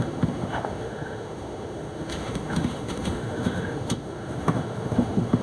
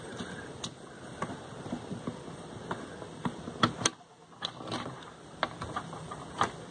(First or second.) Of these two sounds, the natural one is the second